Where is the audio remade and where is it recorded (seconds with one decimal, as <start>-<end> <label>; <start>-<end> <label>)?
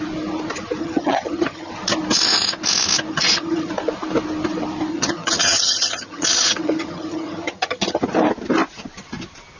0.0-0.8 recorded; 0.8-1.7 remade; 1.7-3.1 recorded; 3.1-3.7 remade; 3.7-4.9 recorded; 4.9-8.0 remade; 8.0-9.6 recorded